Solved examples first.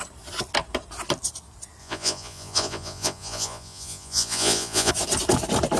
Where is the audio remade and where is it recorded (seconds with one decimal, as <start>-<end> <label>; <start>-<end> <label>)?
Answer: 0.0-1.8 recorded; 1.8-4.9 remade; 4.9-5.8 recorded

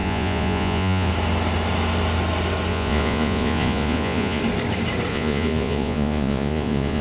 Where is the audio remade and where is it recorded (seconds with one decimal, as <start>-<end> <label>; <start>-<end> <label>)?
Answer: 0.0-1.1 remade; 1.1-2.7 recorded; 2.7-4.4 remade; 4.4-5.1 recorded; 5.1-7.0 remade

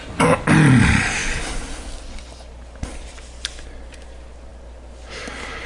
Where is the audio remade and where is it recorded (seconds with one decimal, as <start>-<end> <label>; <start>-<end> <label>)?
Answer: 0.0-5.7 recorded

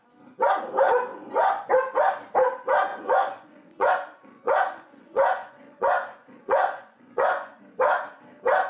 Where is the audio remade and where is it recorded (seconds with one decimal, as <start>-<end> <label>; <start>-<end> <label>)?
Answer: 0.0-1.1 recorded; 1.1-1.7 remade; 1.7-2.9 recorded; 2.9-7.6 remade; 7.6-8.7 recorded